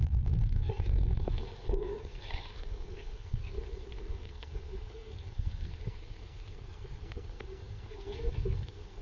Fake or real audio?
fake